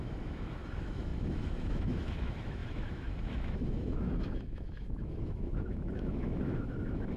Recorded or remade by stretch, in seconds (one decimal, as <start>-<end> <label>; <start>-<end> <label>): 0.0-7.2 remade